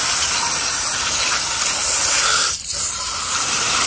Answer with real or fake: real